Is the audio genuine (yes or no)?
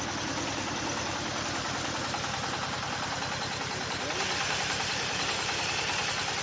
yes